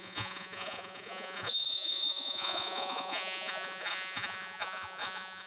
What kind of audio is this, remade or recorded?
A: remade